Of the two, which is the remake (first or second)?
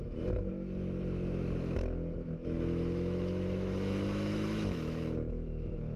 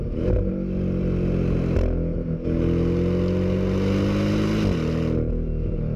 first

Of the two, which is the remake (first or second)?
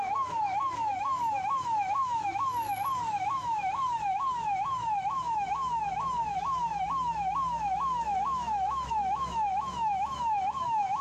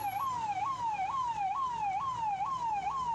first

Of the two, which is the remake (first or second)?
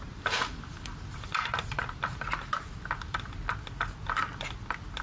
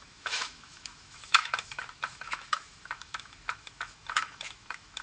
second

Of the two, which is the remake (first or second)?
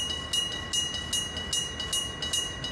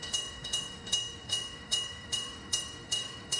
second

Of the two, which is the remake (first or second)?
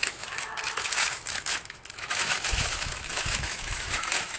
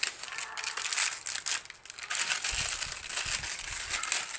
first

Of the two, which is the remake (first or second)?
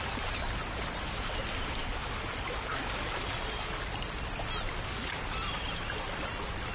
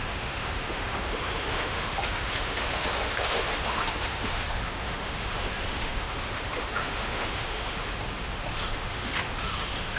second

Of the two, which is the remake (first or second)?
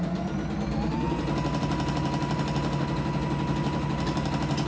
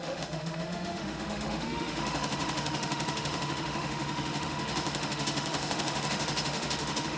second